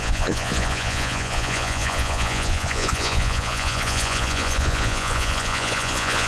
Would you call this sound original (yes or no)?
no